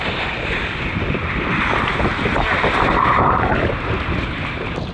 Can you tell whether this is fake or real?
real